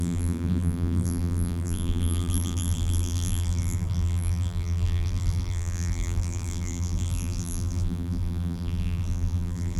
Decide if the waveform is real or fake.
fake